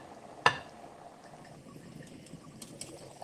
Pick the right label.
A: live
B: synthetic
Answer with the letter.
A